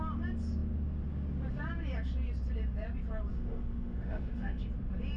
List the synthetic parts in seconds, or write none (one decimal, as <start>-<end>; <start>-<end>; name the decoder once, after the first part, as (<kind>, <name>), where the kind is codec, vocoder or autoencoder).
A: 3.3-4.6 (autoencoder, DAC-VAE)